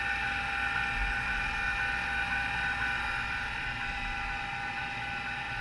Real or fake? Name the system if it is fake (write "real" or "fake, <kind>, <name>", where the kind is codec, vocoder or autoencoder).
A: real